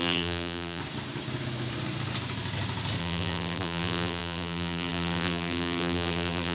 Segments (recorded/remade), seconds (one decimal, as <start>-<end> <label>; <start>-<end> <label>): 0.0-0.8 remade; 0.8-3.0 recorded; 3.0-6.5 remade

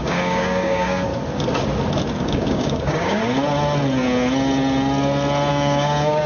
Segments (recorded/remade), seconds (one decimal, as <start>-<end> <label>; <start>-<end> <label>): 0.0-1.1 remade; 1.1-2.2 recorded; 2.2-3.2 remade; 3.2-5.5 recorded; 5.5-6.3 remade

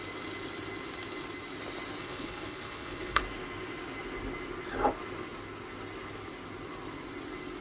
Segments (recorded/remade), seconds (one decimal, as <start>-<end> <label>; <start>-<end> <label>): 0.0-2.0 recorded; 2.0-3.2 remade; 3.2-7.6 recorded

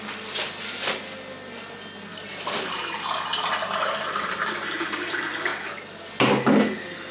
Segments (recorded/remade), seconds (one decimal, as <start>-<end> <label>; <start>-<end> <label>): 0.0-7.1 recorded

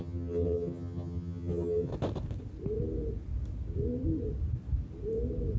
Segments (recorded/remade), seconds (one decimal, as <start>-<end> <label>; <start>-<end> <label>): 0.0-1.9 remade; 1.9-5.6 recorded

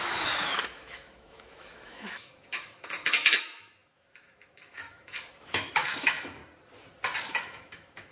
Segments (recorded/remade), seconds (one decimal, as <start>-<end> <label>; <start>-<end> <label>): 0.0-6.4 remade; 6.4-7.2 recorded; 7.2-8.1 remade